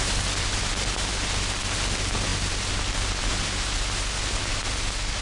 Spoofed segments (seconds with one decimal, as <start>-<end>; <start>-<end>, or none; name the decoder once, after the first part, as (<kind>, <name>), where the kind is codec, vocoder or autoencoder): none